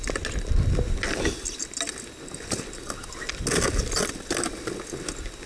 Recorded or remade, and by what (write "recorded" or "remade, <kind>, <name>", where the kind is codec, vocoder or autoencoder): recorded